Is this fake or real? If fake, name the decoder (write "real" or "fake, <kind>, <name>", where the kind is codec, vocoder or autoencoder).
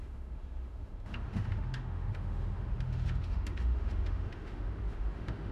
fake, autoencoder, DAC-VAE